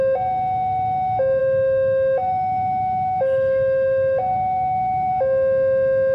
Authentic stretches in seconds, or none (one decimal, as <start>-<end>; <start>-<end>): 0.0-1.4; 5.1-6.1